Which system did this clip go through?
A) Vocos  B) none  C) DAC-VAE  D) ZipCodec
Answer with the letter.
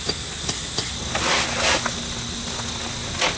B